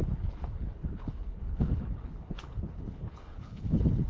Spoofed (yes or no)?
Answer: yes